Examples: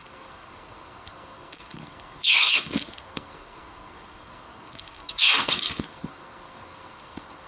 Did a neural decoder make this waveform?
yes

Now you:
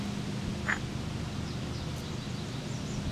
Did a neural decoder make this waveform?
no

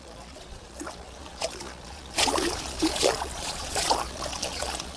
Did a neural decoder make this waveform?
yes